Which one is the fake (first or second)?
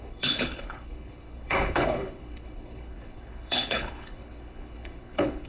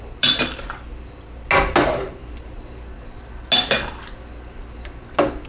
first